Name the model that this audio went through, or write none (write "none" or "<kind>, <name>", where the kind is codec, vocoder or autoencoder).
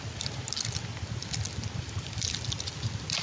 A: none